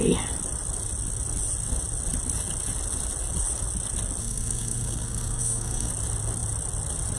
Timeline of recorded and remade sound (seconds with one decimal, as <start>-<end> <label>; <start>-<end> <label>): 0.0-4.2 recorded; 4.2-5.9 remade; 5.9-7.2 recorded